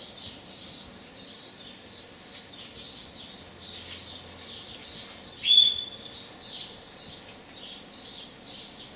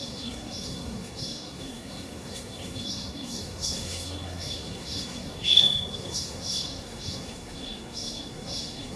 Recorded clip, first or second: first